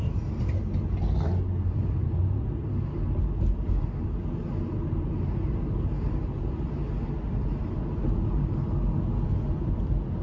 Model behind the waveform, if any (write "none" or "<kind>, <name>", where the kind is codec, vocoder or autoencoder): none